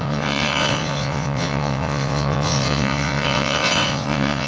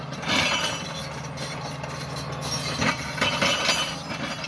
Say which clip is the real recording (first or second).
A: second